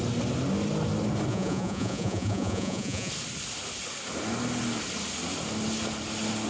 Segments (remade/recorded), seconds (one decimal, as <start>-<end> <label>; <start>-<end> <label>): 0.0-1.3 recorded; 1.3-3.1 remade; 3.1-6.5 recorded